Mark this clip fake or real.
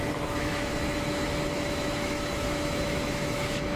fake